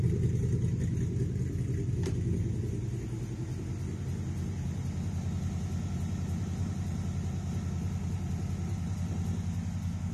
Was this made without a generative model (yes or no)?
yes